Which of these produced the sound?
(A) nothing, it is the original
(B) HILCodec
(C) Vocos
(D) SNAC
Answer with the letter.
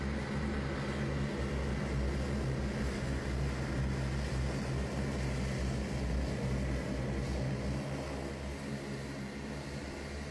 A